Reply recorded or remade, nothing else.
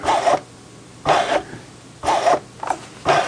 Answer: recorded